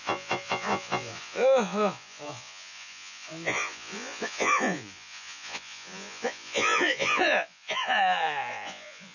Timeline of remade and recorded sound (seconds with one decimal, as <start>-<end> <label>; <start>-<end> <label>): 0.0-9.1 remade

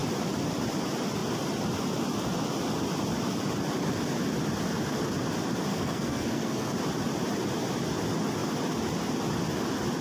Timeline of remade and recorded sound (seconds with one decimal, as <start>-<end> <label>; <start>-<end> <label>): 0.0-5.7 recorded; 5.7-6.7 remade; 6.7-10.0 recorded